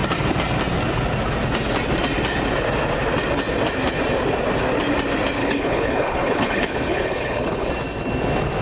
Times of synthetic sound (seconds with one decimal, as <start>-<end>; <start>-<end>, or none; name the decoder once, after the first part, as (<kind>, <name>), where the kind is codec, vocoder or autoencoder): 5.4-7.7 (codec, HILCodec)

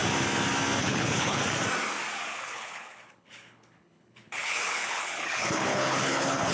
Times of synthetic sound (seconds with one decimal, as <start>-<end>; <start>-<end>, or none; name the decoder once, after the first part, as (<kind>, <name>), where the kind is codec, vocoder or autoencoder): 0.8-1.4 (codec, HILCodec); 2.3-6.5

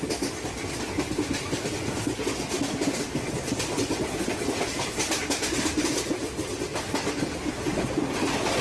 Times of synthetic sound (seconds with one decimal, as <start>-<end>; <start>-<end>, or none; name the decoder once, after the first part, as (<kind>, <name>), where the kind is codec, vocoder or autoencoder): none

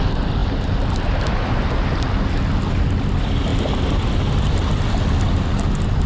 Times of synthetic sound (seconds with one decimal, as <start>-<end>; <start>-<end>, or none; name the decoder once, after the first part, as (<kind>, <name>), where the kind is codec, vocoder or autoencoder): none

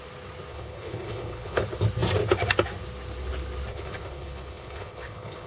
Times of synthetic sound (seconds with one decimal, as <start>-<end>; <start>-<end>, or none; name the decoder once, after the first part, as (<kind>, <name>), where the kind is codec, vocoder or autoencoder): 0.5-1.6 (codec, HILCodec); 3.7-5.5

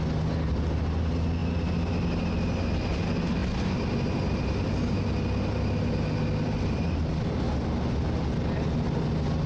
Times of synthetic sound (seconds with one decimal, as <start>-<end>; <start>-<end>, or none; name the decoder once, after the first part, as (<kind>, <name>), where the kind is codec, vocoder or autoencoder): none

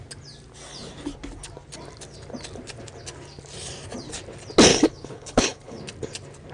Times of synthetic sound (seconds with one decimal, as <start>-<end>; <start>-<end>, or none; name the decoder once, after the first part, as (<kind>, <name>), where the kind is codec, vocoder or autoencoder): 4.7-5.8 (codec, HILCodec)